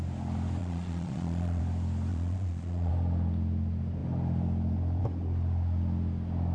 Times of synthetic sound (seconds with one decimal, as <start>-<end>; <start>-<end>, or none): 0.6-1.6; 2.1-2.9